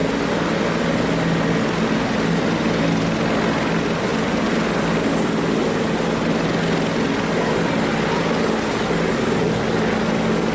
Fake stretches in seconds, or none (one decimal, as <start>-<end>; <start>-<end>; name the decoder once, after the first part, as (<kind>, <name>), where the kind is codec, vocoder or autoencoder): none